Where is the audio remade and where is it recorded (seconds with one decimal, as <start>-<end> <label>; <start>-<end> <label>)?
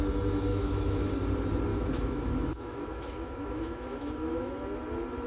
0.0-0.5 recorded; 0.5-1.1 remade; 1.1-1.7 recorded; 1.7-4.5 remade; 4.5-5.3 recorded